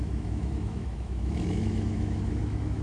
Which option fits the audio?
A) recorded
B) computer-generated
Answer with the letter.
B